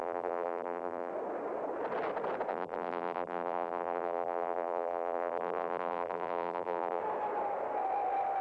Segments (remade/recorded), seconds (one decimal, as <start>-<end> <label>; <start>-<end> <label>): 0.0-1.1 remade; 1.1-2.5 recorded; 2.5-7.0 remade; 7.0-8.4 recorded